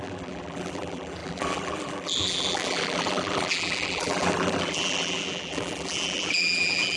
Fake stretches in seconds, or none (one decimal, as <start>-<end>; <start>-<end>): 0.0-7.0